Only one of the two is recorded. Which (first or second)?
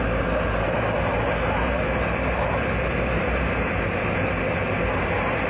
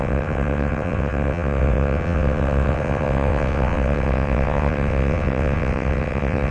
first